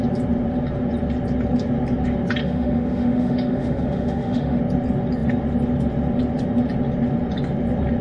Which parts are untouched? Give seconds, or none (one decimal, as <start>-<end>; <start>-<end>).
0.0-2.4; 4.6-8.0